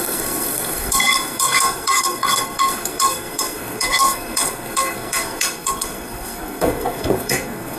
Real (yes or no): no